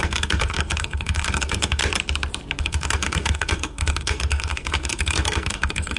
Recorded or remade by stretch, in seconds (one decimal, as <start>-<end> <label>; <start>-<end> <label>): 0.0-1.8 remade; 1.8-2.6 recorded; 2.6-6.0 remade